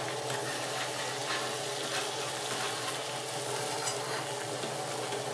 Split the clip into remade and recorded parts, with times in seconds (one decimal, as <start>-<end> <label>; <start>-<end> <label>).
0.0-5.3 recorded